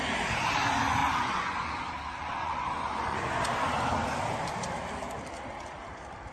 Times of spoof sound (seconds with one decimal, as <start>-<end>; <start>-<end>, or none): 1.0-1.7; 2.2-3.5